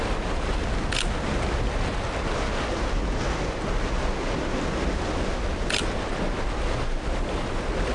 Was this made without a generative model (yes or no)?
yes